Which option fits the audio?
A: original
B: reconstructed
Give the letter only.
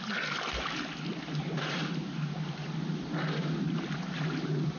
A